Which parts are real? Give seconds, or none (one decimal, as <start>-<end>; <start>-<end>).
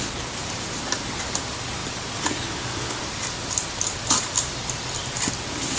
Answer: none